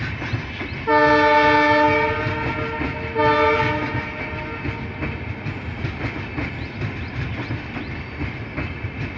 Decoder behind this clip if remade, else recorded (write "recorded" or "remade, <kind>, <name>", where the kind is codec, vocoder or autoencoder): recorded